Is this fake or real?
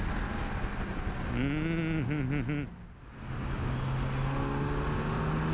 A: real